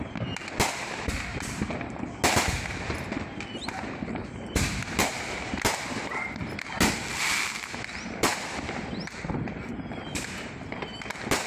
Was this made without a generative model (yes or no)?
yes